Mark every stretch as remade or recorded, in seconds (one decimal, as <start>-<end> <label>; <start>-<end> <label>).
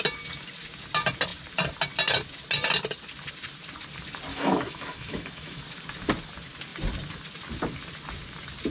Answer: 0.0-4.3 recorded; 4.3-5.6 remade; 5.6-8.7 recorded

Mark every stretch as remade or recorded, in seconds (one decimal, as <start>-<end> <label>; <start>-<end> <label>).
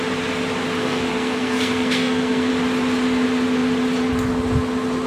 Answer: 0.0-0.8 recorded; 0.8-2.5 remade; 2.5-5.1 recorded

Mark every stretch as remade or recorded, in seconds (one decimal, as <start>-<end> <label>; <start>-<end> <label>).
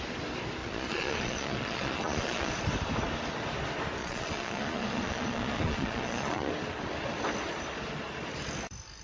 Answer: 0.0-0.6 recorded; 0.6-2.5 remade; 2.5-4.0 recorded; 4.0-6.5 remade; 6.5-9.0 recorded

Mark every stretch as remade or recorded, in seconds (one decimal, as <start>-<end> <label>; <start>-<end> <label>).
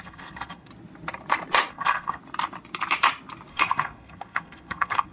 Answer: 0.0-0.7 remade; 0.7-1.7 recorded; 1.7-2.2 remade; 2.2-3.5 recorded; 3.5-5.1 remade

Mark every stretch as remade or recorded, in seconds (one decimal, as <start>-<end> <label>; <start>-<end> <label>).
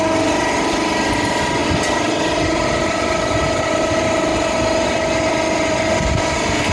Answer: 0.0-1.6 recorded; 1.6-3.9 remade; 3.9-4.3 recorded; 4.3-5.8 remade; 5.8-6.7 recorded